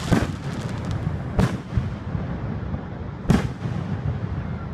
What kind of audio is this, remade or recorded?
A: recorded